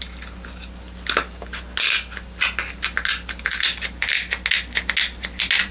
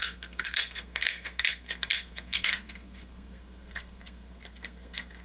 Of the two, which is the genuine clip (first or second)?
first